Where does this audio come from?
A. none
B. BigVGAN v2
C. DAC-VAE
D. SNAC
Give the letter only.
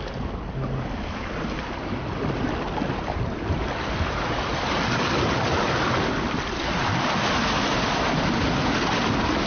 A